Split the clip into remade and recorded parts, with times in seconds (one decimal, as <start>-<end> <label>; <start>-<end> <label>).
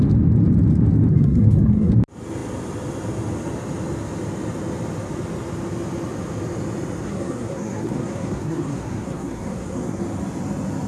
0.0-1.1 recorded; 1.1-1.9 remade; 1.9-7.0 recorded; 7.0-10.0 remade; 10.0-10.9 recorded